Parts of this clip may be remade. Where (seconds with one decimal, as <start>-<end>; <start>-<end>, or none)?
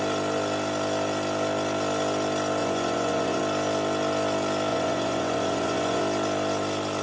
2.6-3.4; 4.7-6.0